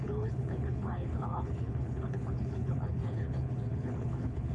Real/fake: fake